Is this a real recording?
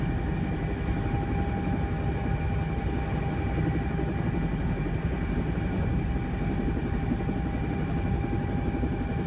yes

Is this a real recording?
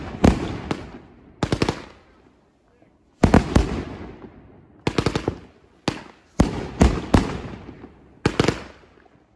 yes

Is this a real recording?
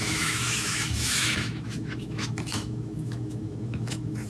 no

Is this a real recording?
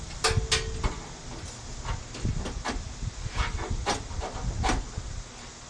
yes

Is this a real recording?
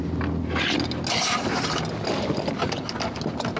yes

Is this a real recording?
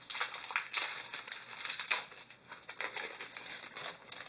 yes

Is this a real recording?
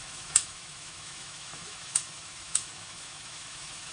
no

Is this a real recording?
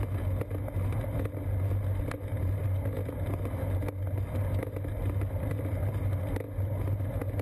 yes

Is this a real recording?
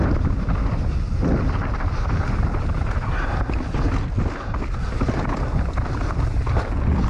yes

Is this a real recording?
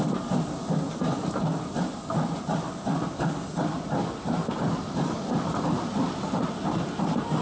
yes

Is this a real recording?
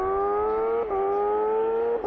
yes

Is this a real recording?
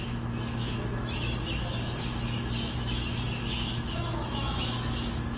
no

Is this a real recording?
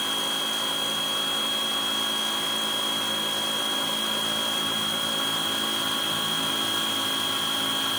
yes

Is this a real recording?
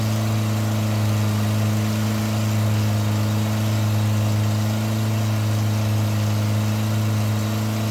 yes